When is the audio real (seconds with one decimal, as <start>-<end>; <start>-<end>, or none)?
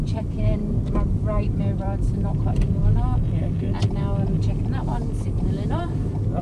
2.8-5.4